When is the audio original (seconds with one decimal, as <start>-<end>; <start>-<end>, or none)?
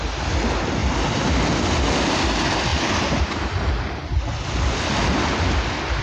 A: 0.0-6.0